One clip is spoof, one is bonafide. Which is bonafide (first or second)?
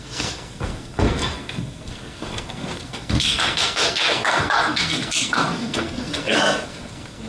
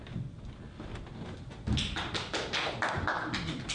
second